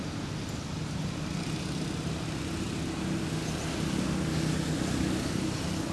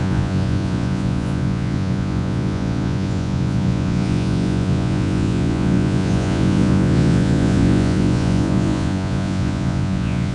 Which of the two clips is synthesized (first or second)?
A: second